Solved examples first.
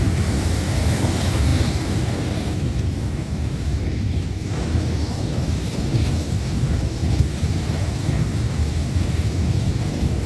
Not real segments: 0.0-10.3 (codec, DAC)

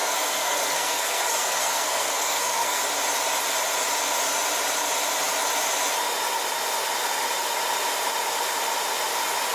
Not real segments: 0.0-2.8 (codec, SNAC)